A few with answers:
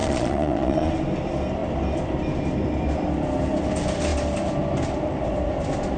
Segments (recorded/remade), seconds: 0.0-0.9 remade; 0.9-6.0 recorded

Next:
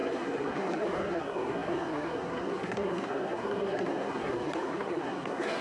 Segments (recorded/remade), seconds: 0.0-5.6 remade